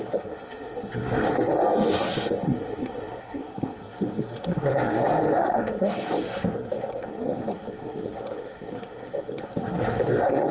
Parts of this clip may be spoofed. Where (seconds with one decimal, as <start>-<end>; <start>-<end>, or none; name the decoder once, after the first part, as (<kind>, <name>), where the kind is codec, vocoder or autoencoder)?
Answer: 0.0-10.5 (codec, SNAC)